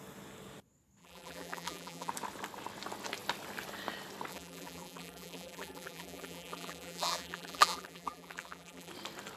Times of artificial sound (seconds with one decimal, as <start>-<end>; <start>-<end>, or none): 1.0-2.1; 4.3-8.9